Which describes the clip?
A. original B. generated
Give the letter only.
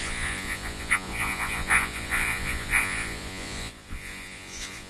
B